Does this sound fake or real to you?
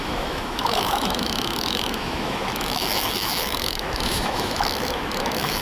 fake